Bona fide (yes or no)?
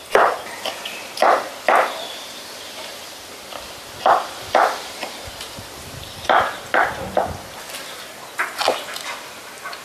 yes